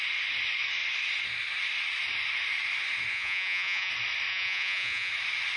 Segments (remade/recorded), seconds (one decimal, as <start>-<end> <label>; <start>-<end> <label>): 0.0-3.1 recorded; 3.1-3.9 remade; 3.9-4.3 recorded; 4.3-5.1 remade; 5.1-5.6 recorded